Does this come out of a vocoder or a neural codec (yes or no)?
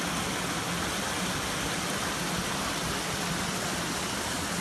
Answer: no